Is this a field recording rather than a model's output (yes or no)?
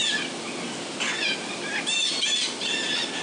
yes